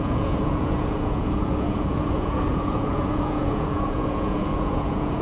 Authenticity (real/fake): fake